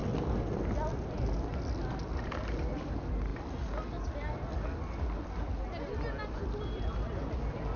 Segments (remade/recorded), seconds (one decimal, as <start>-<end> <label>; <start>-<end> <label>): 0.0-7.8 recorded